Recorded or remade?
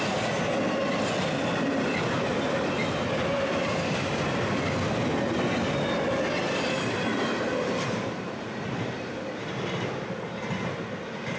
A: recorded